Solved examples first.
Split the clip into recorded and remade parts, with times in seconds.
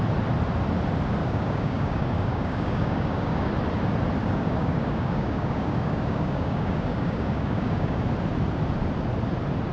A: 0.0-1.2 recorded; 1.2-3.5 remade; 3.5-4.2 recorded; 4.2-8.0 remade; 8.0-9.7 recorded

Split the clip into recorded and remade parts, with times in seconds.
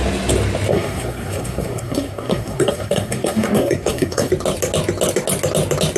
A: 0.0-0.7 recorded; 0.7-4.3 remade; 4.3-6.0 recorded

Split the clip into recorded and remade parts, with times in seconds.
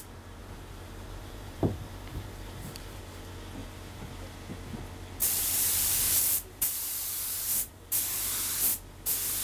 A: 0.0-0.4 recorded; 0.4-3.0 remade; 3.0-3.6 recorded; 3.6-4.1 remade; 4.1-5.2 recorded; 5.2-8.3 remade; 8.3-9.4 recorded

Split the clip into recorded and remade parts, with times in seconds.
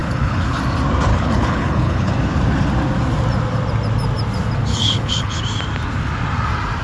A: 0.0-0.6 remade; 0.6-1.1 recorded; 1.1-2.1 remade; 2.1-4.7 recorded; 4.7-5.4 remade; 5.4-6.8 recorded